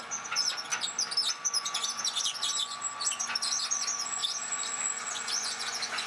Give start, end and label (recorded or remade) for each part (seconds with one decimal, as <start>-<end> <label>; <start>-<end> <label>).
0.0-0.7 remade; 0.7-1.3 recorded; 1.3-6.1 remade